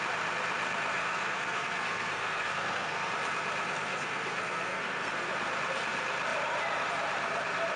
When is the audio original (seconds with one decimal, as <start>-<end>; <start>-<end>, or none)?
0.0-0.9; 3.1-3.7; 5.3-7.8